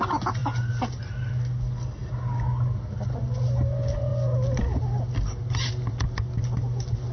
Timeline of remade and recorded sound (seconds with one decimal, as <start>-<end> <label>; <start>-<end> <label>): 0.0-7.1 recorded